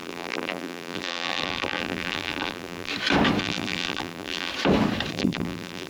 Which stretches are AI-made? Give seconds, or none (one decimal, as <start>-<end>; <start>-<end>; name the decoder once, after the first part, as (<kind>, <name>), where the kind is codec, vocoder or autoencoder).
0.0-2.9 (vocoder, BigVGAN v2); 3.4-4.5; 5.1-5.9